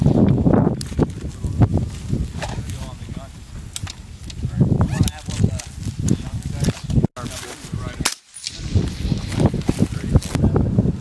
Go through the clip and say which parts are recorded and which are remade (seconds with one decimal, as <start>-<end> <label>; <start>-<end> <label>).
0.0-11.0 recorded